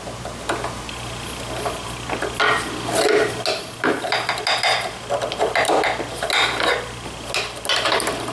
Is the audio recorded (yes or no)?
yes